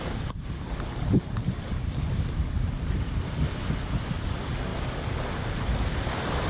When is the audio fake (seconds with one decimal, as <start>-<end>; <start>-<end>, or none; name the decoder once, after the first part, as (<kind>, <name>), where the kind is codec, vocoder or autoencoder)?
none